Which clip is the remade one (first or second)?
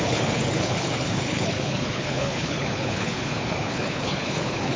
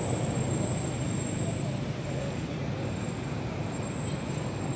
first